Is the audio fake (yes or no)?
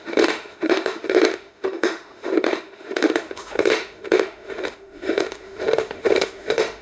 yes